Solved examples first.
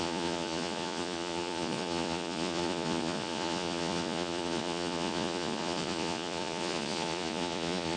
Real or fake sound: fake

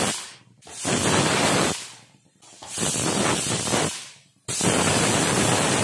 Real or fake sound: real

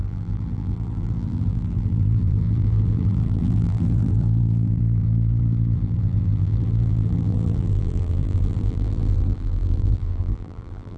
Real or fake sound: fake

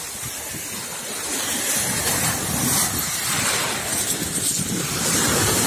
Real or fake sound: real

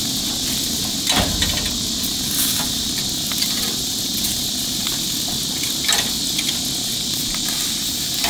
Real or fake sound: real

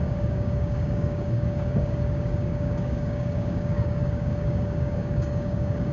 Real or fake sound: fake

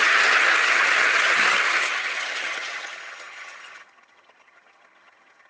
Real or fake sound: fake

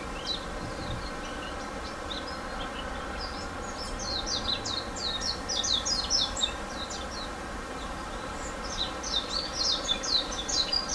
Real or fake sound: real